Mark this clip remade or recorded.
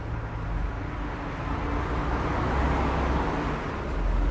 recorded